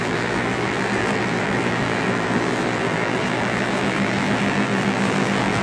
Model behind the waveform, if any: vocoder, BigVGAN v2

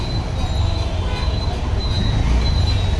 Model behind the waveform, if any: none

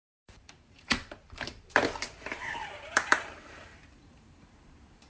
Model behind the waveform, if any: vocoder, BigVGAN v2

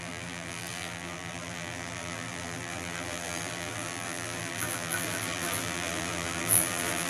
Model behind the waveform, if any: vocoder, BigVGAN v2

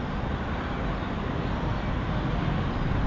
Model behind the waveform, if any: none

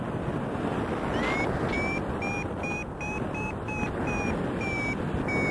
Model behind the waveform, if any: none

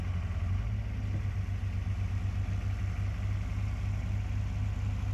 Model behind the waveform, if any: none